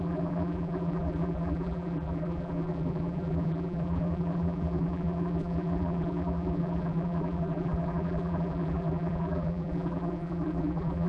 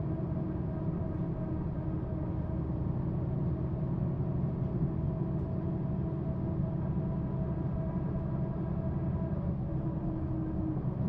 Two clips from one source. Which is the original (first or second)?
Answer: second